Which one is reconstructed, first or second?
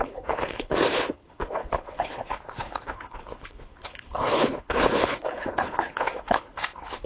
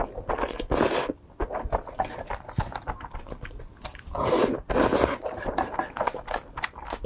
first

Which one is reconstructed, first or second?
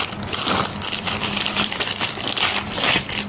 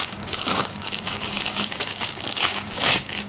second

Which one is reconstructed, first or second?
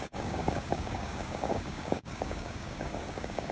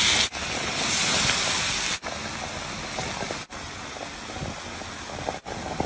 first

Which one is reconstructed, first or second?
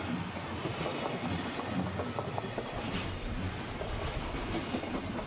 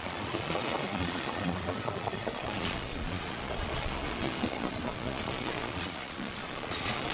second